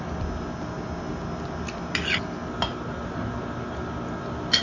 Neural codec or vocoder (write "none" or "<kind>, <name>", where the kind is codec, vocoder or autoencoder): none